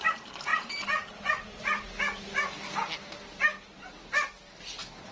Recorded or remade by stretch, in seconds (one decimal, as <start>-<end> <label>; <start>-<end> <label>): 0.0-0.5 recorded; 0.5-2.0 remade; 2.0-5.1 recorded